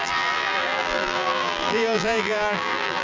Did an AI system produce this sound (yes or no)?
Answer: yes